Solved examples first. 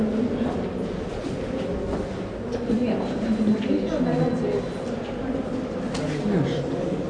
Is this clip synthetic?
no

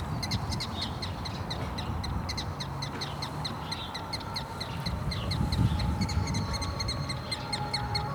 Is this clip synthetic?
no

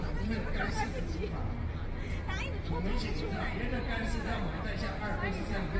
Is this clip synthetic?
no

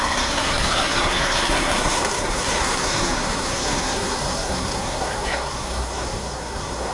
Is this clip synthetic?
yes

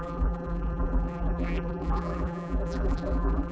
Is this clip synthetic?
yes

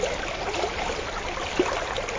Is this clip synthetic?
no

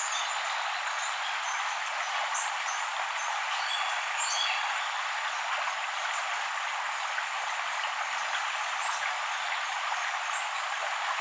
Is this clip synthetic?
no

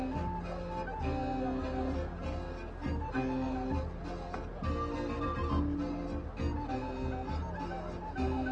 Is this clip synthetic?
no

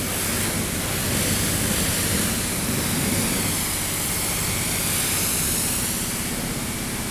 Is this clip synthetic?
no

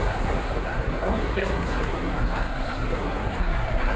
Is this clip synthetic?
yes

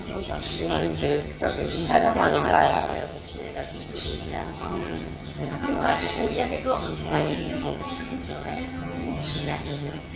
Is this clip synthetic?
yes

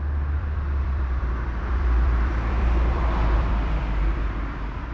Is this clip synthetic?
yes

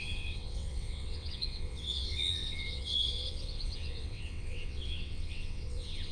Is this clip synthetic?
yes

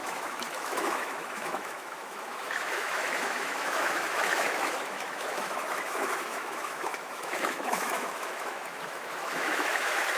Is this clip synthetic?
yes